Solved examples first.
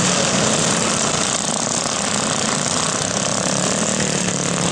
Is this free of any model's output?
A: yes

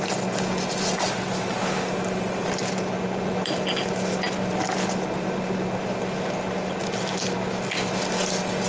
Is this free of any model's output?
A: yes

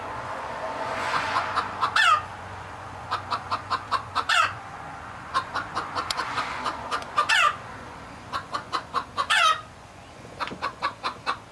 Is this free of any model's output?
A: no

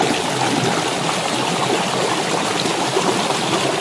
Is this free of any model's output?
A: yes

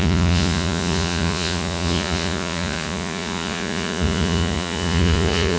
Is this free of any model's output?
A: no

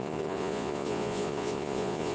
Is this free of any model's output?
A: no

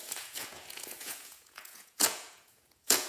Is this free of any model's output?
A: no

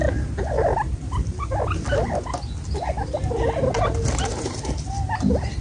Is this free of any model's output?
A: yes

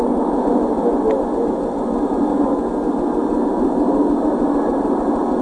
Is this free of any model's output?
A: yes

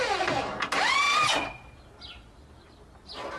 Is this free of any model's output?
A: yes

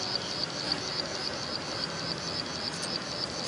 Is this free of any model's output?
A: yes